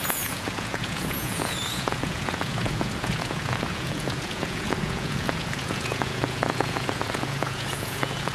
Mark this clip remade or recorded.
remade